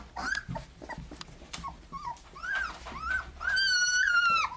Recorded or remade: recorded